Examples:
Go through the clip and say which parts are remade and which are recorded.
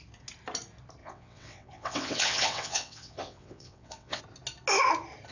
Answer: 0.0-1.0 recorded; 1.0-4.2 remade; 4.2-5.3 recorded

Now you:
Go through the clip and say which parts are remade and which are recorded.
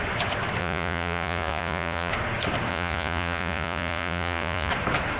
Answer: 0.0-0.6 recorded; 0.6-2.1 remade; 2.1-2.7 recorded; 2.7-4.7 remade; 4.7-5.2 recorded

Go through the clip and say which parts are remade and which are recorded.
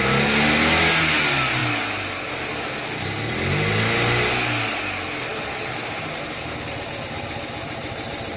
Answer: 0.0-8.4 recorded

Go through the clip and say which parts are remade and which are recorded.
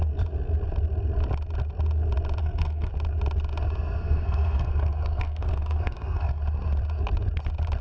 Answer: 0.0-2.4 recorded; 2.4-2.9 remade; 2.9-4.0 recorded; 4.0-6.4 remade; 6.4-7.8 recorded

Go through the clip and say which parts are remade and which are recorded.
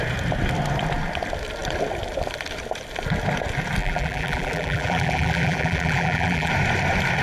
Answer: 0.0-3.8 recorded; 3.8-6.5 remade; 6.5-7.2 recorded